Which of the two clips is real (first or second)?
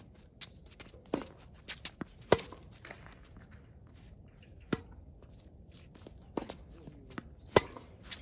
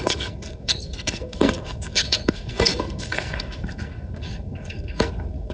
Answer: first